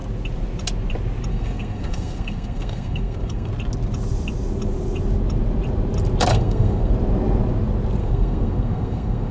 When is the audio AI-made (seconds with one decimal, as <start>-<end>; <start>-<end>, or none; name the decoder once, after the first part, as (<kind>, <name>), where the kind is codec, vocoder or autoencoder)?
1.3-3.5 (codec, SNAC); 6.3-6.9; 8.0-9.3